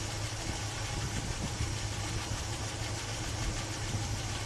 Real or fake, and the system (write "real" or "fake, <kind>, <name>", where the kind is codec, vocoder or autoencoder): real